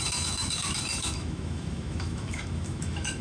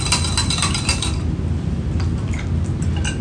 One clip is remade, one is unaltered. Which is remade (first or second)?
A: first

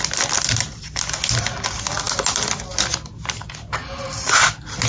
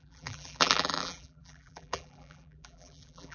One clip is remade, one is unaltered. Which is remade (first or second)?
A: second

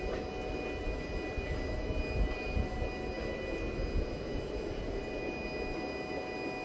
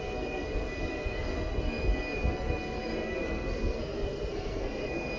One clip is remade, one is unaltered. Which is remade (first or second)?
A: second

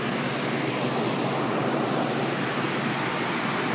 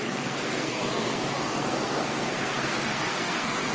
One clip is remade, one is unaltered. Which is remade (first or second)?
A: second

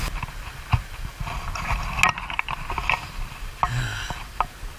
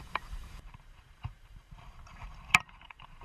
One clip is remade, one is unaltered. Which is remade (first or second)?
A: second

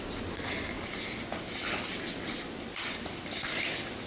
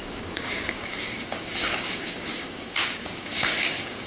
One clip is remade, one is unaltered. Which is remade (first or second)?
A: second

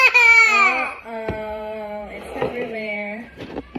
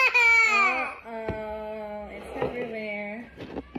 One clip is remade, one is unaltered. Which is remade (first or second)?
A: first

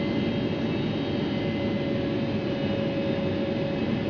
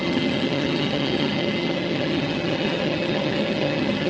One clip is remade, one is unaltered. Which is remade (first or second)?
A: second